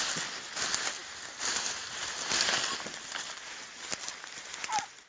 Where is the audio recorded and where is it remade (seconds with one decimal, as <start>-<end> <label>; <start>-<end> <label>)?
0.0-5.1 recorded